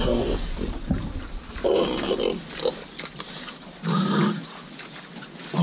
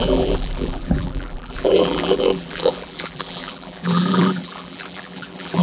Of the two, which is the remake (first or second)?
second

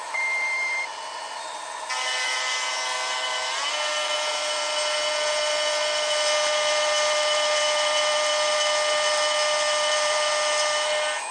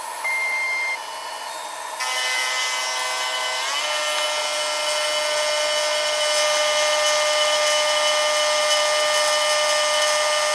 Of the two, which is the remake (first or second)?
first